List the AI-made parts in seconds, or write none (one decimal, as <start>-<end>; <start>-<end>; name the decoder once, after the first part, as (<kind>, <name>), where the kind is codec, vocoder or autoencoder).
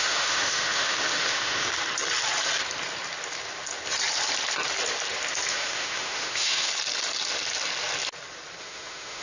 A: 0.0-1.7 (autoencoder, DAC-VAE); 5.5-6.7; 8.6-9.2